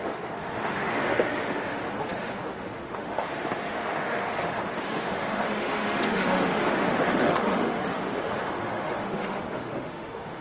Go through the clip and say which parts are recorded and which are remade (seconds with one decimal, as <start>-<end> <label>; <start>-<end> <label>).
0.0-10.4 remade